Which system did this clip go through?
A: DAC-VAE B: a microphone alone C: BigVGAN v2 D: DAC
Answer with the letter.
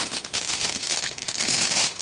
A